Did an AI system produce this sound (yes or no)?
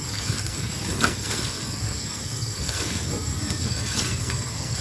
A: yes